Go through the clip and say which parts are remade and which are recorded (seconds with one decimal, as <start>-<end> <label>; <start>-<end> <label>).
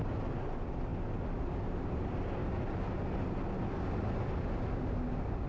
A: 0.0-5.5 recorded